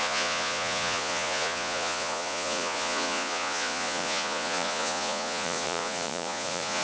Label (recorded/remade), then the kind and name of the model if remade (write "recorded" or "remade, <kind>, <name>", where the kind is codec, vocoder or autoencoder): remade, vocoder, Vocos